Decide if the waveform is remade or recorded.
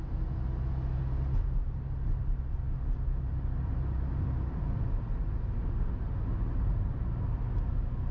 recorded